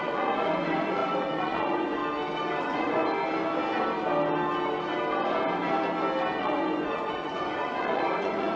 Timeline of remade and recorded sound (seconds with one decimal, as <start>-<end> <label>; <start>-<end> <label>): 0.0-2.0 remade; 2.0-2.6 recorded; 2.6-3.0 remade; 3.0-6.4 recorded; 6.4-8.6 remade